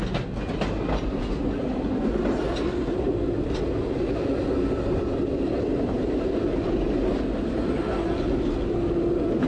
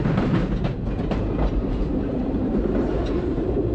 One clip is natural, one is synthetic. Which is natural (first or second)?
first